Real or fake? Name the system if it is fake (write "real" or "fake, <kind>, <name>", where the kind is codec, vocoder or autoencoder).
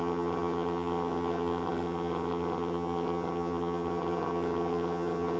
fake, vocoder, HiFi-GAN